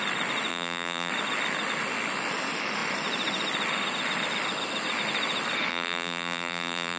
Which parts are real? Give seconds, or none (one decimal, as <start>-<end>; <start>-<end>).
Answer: 0.0-0.5; 1.1-5.7

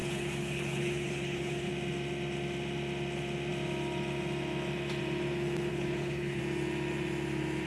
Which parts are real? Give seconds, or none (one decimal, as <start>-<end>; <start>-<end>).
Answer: 1.7-5.7; 6.4-7.7